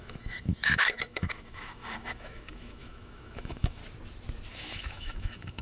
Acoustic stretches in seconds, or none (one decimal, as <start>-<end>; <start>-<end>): 3.8-4.5